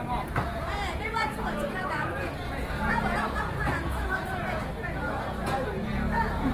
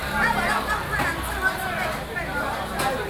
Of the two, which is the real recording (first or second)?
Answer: second